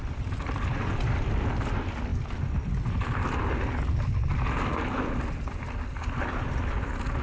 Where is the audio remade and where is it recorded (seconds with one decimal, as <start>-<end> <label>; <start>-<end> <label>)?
0.0-7.2 recorded